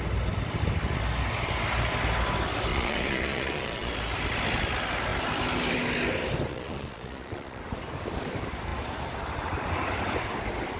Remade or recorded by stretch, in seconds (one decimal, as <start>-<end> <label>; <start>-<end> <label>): 0.0-2.7 recorded; 2.7-3.9 remade; 3.9-6.5 recorded; 6.5-7.6 remade; 7.6-10.8 recorded